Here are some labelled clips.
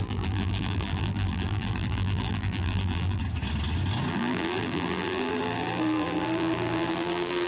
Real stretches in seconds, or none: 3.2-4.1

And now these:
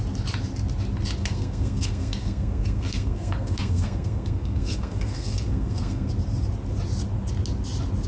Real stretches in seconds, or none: 0.0-1.2; 6.1-8.1

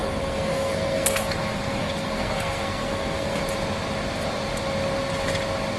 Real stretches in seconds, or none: 3.4-5.8

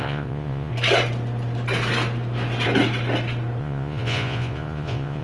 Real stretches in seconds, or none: 0.7-3.6

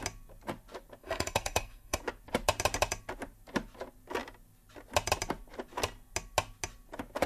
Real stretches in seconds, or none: 0.0-1.0; 2.0-7.3

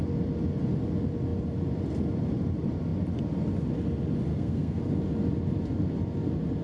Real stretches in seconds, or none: 0.0-4.3; 4.8-6.6

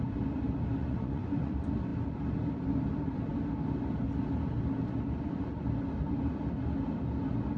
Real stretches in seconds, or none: 0.0-0.8; 1.5-7.6